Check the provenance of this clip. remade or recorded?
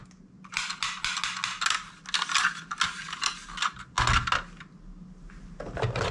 recorded